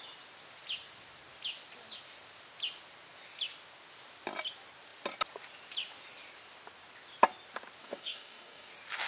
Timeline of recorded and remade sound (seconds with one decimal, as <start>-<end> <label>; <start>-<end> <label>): 0.0-7.8 recorded; 7.8-8.7 remade; 8.7-9.1 recorded